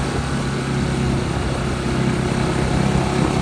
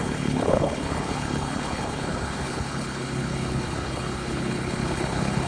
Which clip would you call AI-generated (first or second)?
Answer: second